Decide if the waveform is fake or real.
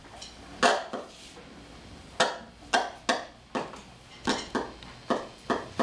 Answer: real